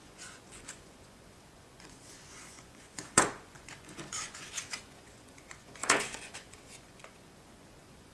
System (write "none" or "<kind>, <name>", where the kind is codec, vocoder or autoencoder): vocoder, Vocos